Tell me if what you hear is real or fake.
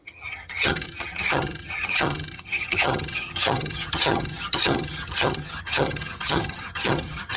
fake